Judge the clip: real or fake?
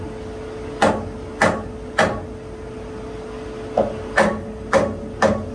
real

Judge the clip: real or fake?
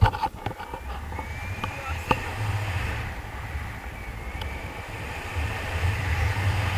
real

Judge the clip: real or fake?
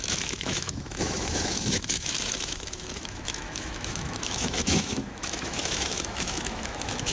fake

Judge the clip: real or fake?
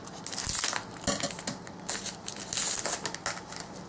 real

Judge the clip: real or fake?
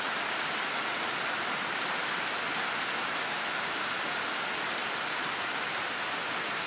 real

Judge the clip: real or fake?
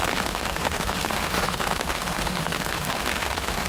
fake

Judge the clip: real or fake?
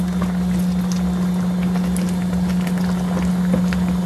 real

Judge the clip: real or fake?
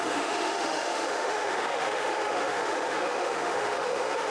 fake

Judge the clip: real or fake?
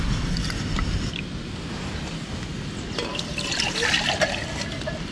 real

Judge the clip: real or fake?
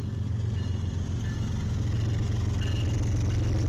real